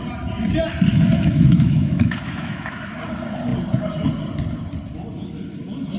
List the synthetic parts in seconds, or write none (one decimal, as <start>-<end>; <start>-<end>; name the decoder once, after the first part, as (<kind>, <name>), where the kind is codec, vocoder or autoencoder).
0.9-2.8 (autoencoder, DAC-VAE)